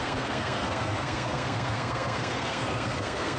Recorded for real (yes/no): no